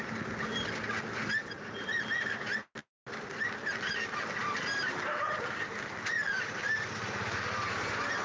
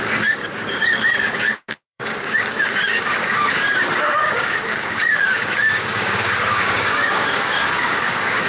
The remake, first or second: second